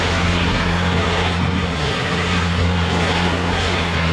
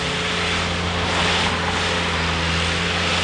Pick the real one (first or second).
second